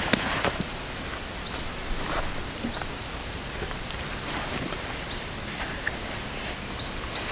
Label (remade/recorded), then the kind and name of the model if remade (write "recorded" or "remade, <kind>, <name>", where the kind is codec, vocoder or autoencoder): recorded